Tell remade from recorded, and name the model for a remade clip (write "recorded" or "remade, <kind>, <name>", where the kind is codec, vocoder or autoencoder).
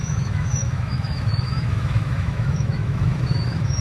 remade, autoencoder, DAC-VAE